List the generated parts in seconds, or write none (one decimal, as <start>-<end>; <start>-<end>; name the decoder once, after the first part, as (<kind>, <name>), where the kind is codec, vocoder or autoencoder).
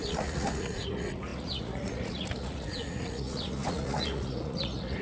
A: 0.0-5.0 (vocoder, Vocos)